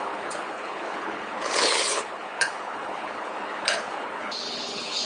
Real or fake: fake